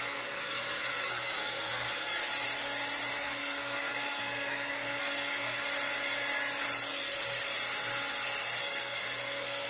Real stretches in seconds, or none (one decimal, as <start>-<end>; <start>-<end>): 2.2-3.1; 5.6-8.6

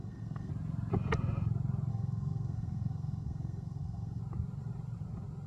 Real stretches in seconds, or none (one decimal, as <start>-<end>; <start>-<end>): 0.5-1.9; 4.2-5.5

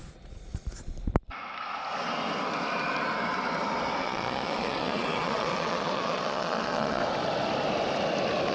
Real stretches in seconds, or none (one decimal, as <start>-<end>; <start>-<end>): 0.5-4.0; 7.0-8.5

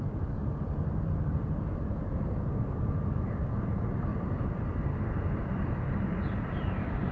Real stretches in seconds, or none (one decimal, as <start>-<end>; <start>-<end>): none

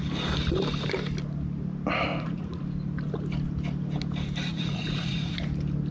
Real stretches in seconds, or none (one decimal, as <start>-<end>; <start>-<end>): 0.0-2.1; 2.6-4.5; 5.4-5.9

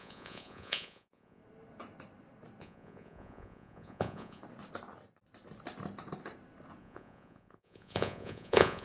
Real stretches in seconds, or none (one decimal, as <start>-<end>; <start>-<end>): 1.4-2.6; 4.4-6.8